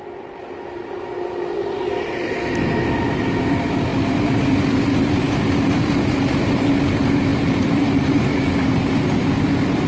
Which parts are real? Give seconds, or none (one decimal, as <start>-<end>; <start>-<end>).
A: 0.0-9.9

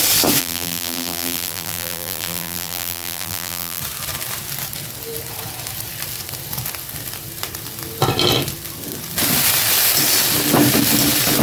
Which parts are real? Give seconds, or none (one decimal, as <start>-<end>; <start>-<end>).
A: 0.0-0.4; 3.8-11.4

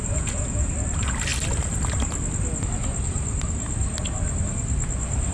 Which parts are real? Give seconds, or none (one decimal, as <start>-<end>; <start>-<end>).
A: 0.7-5.3

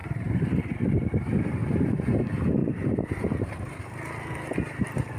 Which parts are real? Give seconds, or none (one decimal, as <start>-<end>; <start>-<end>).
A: 0.9-1.6; 2.2-2.6; 3.8-5.2